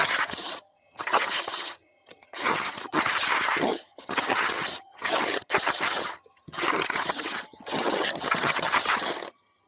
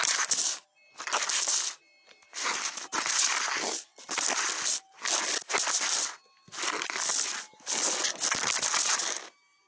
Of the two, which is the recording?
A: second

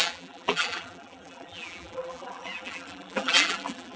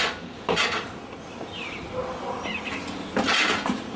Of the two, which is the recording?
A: second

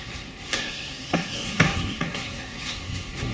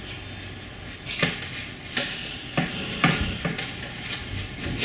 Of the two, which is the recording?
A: second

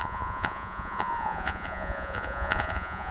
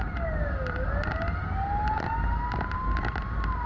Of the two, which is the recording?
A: second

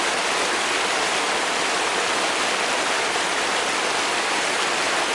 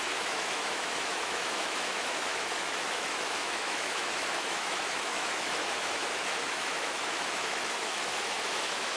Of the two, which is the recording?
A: first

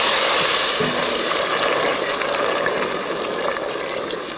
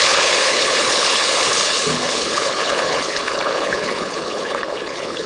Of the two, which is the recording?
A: first